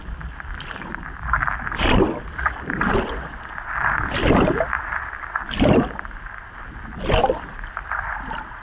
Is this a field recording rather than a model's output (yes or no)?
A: yes